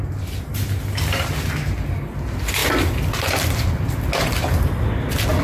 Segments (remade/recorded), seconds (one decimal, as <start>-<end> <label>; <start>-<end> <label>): 0.0-5.4 recorded